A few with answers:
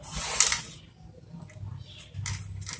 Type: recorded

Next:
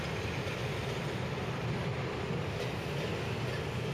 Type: recorded